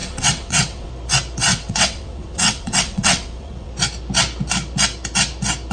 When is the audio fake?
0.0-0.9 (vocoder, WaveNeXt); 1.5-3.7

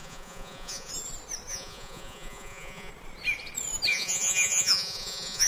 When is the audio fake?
0.0-0.9 (vocoder, Vocos); 1.5-2.9; 3.9-5.5

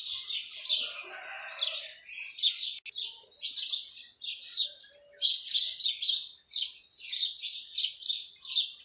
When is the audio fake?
none